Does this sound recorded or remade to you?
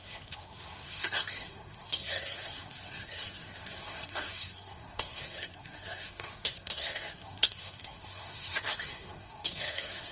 remade